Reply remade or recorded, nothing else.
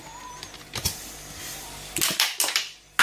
recorded